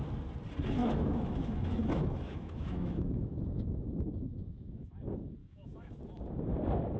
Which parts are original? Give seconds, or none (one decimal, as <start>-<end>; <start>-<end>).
0.0-0.8; 4.9-5.4; 6.0-7.0